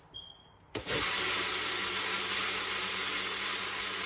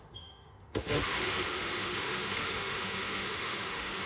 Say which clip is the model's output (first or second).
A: second